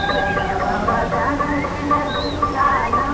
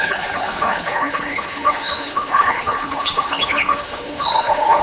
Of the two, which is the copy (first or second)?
second